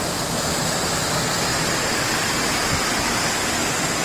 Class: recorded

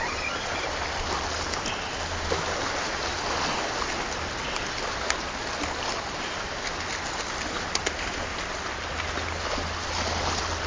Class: recorded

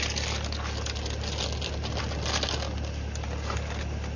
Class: recorded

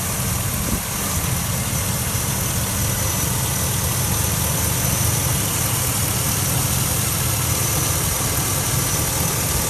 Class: recorded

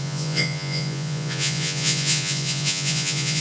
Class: remade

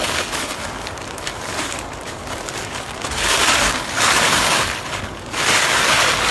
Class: remade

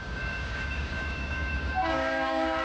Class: remade